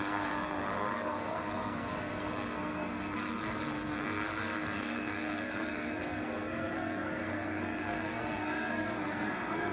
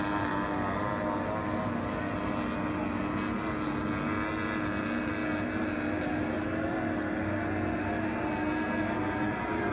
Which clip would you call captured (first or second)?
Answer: second